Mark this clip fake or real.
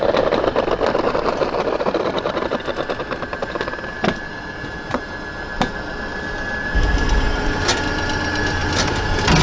real